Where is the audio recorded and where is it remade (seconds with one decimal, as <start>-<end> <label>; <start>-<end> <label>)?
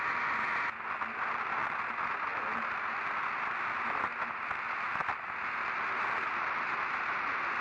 0.0-7.6 recorded